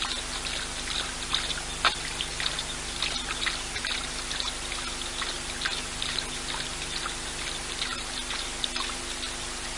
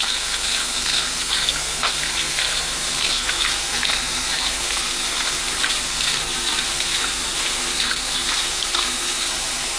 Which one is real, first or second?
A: first